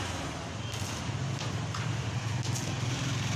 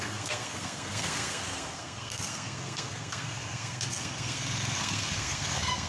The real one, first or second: first